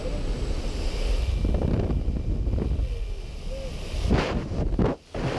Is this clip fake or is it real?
real